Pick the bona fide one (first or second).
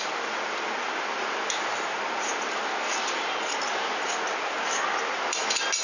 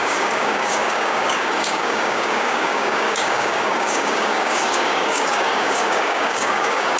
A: first